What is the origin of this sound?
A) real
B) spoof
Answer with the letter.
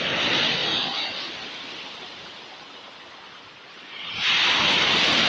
A